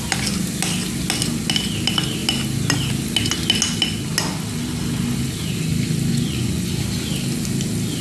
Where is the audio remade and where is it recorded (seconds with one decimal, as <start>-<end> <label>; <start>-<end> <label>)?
0.0-6.1 recorded; 6.1-6.8 remade; 6.8-8.0 recorded